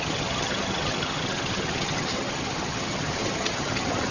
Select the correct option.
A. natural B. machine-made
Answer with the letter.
B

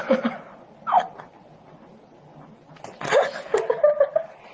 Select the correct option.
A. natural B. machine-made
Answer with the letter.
A